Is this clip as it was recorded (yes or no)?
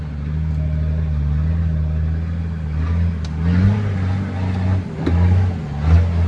yes